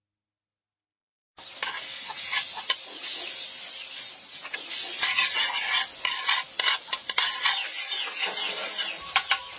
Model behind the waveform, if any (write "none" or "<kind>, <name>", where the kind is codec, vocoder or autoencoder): none